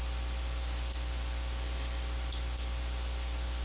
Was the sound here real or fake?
real